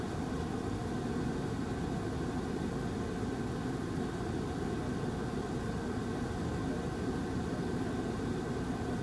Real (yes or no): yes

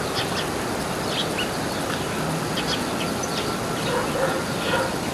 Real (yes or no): yes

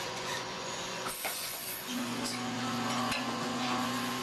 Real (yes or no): no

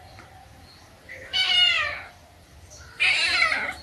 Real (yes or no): yes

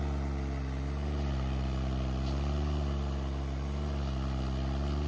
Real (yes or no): yes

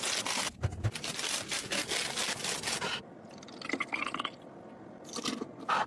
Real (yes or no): yes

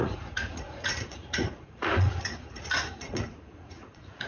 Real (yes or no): no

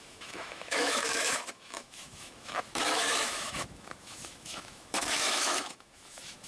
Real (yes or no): no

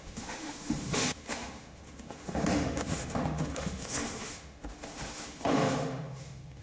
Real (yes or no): no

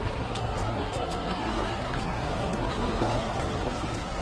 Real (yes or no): no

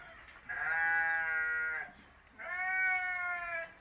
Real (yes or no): yes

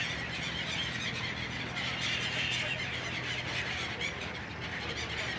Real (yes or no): no